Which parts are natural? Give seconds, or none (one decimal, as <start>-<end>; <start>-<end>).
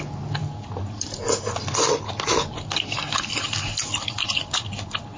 0.0-5.2